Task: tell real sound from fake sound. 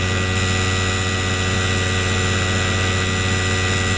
real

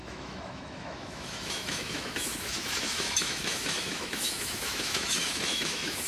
fake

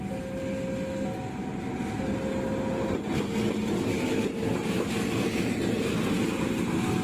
real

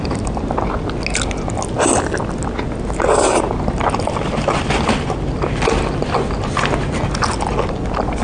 real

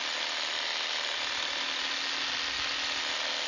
real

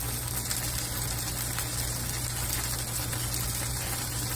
real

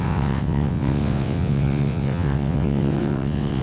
fake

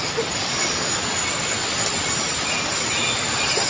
real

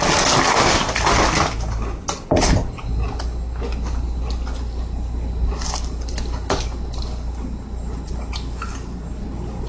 real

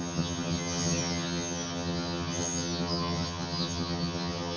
fake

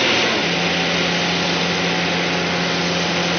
real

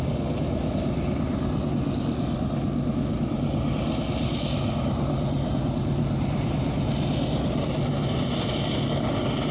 real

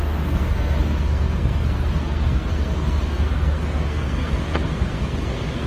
fake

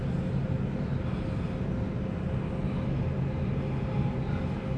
real